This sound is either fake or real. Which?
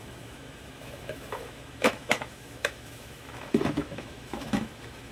fake